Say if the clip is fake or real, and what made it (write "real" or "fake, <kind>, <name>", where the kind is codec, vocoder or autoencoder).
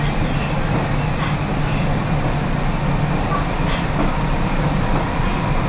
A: real